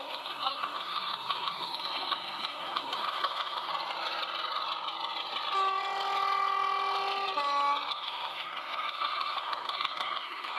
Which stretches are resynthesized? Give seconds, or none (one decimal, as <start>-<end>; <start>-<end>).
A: 0.0-3.7; 7.9-10.6